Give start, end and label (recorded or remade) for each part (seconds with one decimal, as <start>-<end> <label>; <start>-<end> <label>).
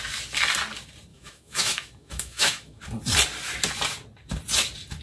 0.0-1.1 recorded; 1.1-2.8 remade; 2.8-5.0 recorded